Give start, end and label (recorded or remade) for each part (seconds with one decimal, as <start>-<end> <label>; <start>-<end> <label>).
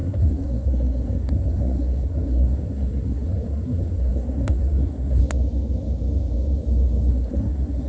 0.0-5.2 remade; 5.2-7.1 recorded; 7.1-7.9 remade